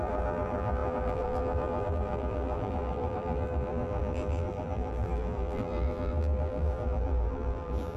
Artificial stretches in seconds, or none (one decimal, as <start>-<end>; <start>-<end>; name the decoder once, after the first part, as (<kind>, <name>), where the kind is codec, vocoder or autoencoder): 0.0-8.0 (vocoder, BigVGAN v2)